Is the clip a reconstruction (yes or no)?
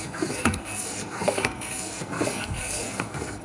yes